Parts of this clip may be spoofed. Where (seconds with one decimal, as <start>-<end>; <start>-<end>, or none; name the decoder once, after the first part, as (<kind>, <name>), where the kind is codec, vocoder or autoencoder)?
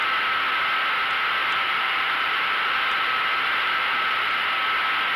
1.4-4.5 (vocoder, BigVGAN v2)